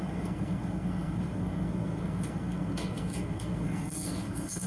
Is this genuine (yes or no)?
no